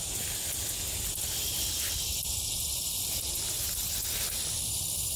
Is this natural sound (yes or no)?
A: yes